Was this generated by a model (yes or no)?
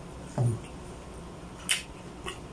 no